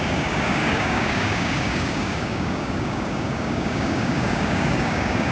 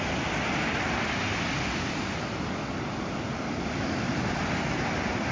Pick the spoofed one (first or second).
first